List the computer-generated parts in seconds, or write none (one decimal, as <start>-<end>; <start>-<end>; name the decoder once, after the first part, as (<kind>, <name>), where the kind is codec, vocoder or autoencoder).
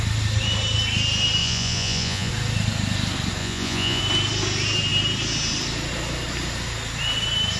1.4-2.3 (vocoder, Vocos); 3.4-4.0